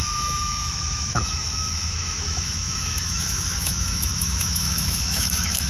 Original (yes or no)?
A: no